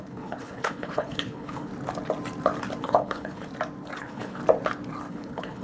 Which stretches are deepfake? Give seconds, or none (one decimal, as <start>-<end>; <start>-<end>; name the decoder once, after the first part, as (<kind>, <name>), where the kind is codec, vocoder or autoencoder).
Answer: 0.0-1.7 (codec, HILCodec); 2.8-3.5; 4.0-4.4; 5.1-5.6